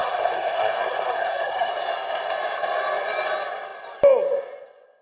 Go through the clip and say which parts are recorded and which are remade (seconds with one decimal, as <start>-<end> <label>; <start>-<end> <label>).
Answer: 0.0-1.7 remade; 1.7-5.0 recorded